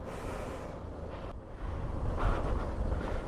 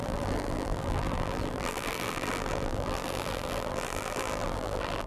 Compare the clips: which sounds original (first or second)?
first